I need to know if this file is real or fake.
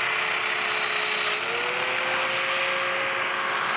real